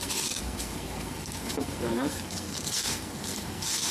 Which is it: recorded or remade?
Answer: remade